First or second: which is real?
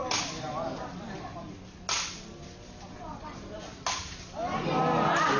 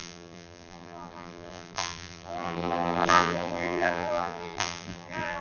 first